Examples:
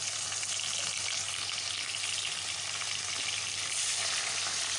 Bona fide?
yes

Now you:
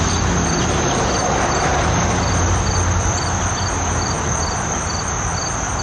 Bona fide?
yes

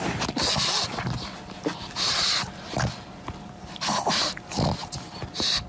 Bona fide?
yes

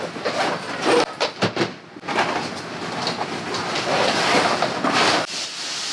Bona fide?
yes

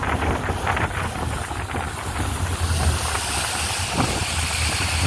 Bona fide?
yes